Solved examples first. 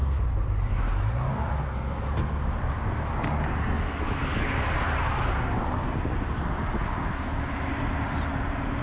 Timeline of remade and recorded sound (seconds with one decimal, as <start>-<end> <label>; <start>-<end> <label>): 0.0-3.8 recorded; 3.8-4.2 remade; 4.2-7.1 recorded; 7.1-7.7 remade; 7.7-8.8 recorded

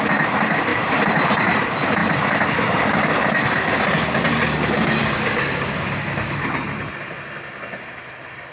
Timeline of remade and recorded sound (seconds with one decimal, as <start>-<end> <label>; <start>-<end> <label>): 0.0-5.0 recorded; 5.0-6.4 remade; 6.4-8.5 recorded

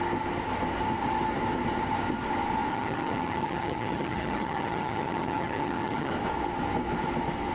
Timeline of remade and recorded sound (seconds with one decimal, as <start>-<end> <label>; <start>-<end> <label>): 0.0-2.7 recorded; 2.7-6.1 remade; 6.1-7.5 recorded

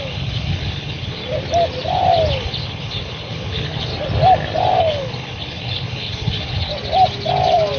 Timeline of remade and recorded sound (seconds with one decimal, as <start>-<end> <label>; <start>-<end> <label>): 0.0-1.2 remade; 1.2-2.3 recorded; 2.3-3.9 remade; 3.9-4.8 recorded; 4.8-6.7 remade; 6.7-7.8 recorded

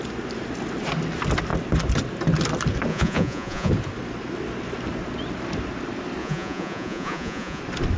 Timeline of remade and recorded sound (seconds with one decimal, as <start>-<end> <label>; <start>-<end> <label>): 0.0-2.9 recorded; 2.9-3.7 remade; 3.7-6.2 recorded; 6.2-7.6 remade; 7.6-8.0 recorded

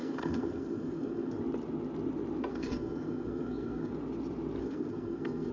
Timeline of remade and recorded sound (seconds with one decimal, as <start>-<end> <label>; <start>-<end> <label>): 0.0-1.4 remade; 1.4-2.5 recorded; 2.5-3.9 remade; 3.9-4.6 recorded; 4.6-5.5 remade